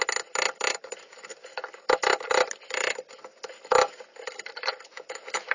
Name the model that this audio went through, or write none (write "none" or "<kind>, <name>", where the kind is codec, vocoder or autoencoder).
none